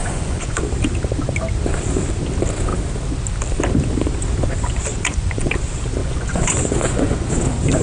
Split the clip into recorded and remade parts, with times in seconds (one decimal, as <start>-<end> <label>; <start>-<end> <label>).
0.0-0.6 remade; 0.6-4.9 recorded; 4.9-5.5 remade; 5.5-6.0 recorded; 6.0-7.3 remade; 7.3-7.8 recorded